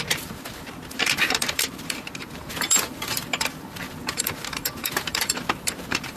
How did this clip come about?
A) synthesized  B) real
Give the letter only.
A